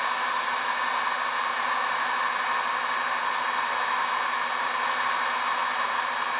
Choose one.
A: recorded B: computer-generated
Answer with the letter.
A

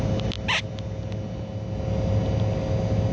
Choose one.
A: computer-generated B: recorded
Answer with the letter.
B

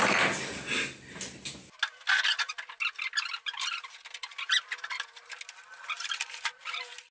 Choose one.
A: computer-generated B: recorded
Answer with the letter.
B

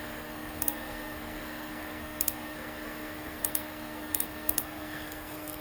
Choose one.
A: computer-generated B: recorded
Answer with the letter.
A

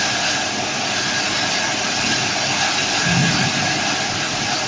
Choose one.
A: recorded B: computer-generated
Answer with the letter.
A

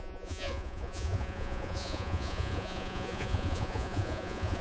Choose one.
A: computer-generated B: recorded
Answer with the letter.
A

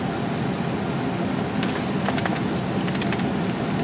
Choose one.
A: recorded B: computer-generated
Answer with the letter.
A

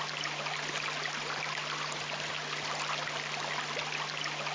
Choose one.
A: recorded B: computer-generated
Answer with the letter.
A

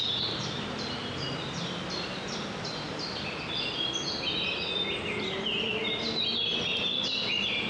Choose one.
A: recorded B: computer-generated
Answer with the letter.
A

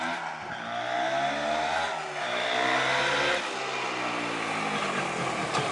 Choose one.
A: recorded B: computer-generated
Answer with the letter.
A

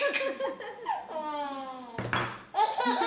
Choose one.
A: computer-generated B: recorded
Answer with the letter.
B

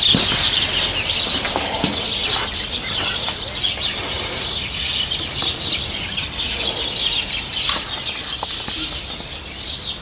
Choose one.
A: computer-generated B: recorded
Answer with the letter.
B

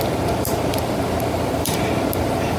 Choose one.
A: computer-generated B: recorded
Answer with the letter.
A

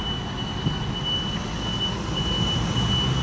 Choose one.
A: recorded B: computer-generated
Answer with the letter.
A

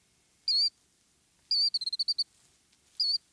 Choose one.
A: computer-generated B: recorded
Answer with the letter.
B